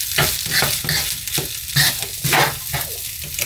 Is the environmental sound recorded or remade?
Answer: recorded